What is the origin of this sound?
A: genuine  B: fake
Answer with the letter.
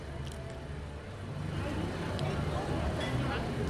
A